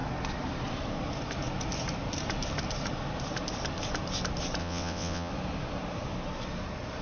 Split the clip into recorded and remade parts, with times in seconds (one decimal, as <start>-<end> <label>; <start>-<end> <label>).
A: 0.0-4.6 recorded; 4.6-5.3 remade; 5.3-7.0 recorded